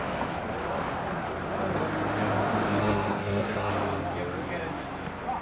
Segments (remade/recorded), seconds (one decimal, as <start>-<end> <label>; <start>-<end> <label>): 0.0-2.8 recorded; 2.8-3.7 remade; 3.7-5.4 recorded